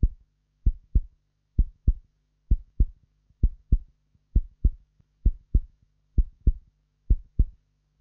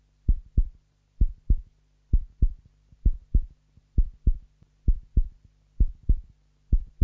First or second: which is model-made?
first